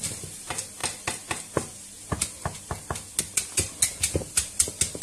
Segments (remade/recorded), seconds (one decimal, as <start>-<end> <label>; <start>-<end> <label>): 0.0-5.0 recorded